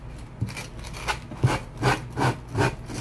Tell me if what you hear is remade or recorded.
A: recorded